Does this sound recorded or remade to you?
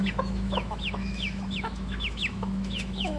remade